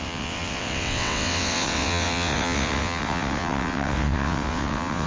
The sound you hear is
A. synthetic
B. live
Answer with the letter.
A